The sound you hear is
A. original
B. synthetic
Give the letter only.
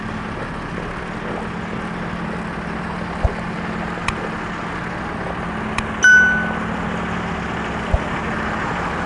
A